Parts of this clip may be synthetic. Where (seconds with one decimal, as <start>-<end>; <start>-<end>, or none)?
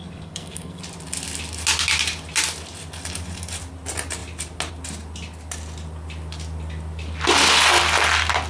0.0-0.8